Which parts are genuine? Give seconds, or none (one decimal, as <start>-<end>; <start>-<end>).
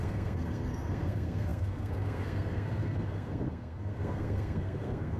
none